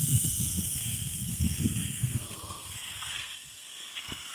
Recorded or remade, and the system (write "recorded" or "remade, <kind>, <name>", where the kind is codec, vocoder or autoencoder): remade, codec, SNAC